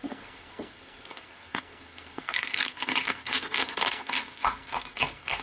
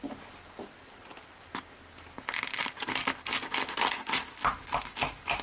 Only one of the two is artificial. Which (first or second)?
first